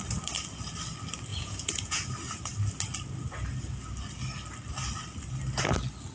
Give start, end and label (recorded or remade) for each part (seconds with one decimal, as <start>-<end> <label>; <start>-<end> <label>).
0.0-1.3 recorded; 1.3-2.1 remade; 2.1-6.1 recorded